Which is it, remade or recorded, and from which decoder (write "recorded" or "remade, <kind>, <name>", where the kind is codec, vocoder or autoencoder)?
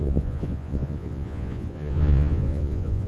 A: remade, vocoder, Vocos